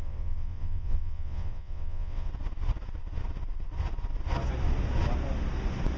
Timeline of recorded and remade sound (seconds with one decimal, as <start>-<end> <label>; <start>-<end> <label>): 0.0-2.3 remade; 2.3-6.0 recorded